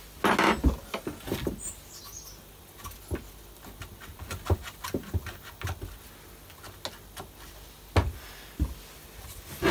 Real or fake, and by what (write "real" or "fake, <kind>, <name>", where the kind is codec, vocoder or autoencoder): real